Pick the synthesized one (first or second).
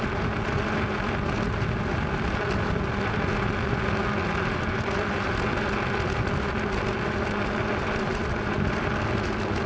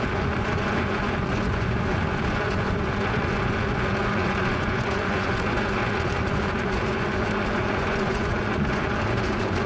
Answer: second